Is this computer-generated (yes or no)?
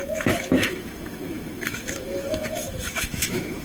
yes